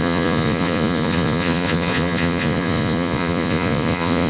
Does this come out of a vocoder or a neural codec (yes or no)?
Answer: yes